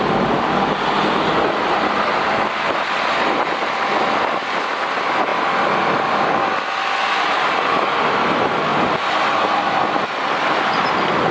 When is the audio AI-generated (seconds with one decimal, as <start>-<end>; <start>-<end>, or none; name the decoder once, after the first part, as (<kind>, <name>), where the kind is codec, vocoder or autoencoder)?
none